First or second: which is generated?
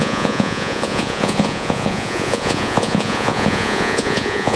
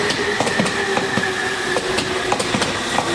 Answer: first